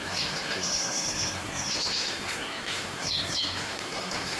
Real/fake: fake